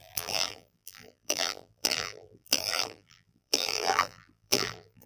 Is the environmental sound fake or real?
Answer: fake